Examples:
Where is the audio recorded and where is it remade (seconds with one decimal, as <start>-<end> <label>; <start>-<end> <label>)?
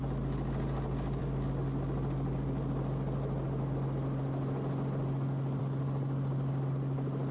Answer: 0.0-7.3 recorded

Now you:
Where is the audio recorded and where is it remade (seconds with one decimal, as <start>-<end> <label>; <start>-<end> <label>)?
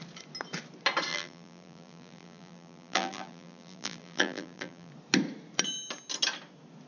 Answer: 0.0-1.1 recorded; 1.1-4.9 remade; 4.9-6.9 recorded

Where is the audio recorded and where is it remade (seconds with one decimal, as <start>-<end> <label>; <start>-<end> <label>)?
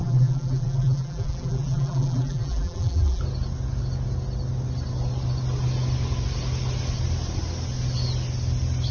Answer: 0.0-3.2 remade; 3.2-8.9 recorded